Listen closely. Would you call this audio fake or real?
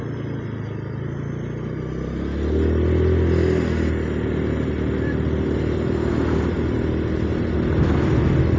real